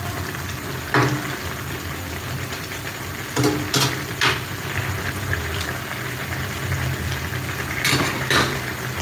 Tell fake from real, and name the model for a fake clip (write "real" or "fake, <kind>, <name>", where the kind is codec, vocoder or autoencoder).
real